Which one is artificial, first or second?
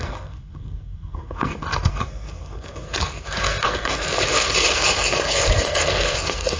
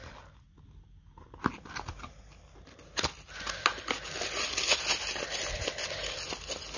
first